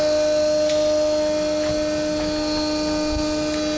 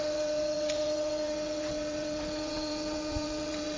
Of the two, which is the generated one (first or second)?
second